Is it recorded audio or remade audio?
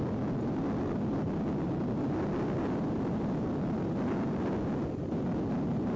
recorded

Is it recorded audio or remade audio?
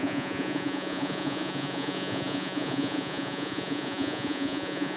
remade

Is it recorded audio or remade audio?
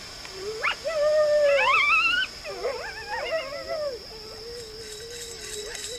recorded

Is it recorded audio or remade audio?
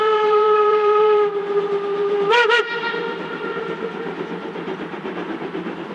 remade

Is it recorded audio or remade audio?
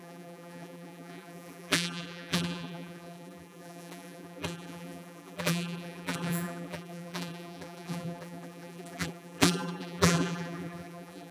remade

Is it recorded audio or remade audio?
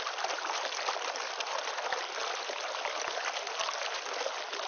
recorded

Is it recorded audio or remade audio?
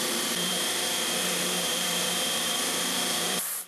remade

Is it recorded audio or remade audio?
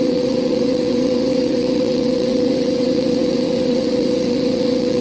remade